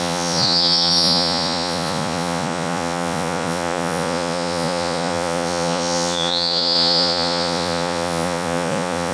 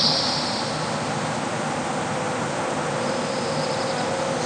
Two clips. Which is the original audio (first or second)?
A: second